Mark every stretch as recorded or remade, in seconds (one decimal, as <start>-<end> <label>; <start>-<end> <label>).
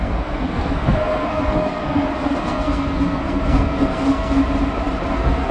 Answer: 0.0-4.4 remade; 4.4-5.1 recorded; 5.1-5.5 remade